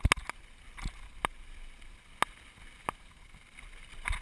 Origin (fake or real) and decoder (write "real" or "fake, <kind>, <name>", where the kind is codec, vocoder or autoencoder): real